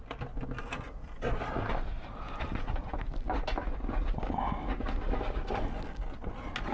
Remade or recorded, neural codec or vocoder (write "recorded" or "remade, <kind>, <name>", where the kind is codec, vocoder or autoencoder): recorded